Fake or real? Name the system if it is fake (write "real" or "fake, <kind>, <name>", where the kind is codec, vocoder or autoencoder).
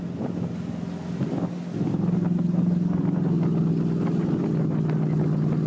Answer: real